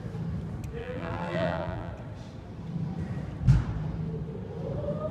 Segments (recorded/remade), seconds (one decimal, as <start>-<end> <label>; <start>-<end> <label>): 0.0-0.8 recorded; 0.8-1.9 remade; 1.9-5.1 recorded